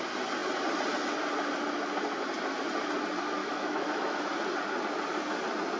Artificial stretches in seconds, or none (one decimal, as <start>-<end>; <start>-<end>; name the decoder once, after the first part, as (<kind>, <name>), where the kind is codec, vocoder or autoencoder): 3.4-4.2 (autoencoder, DAC-VAE)